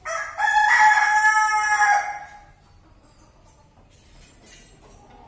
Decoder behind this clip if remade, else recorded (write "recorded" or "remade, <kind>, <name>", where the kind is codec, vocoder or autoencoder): recorded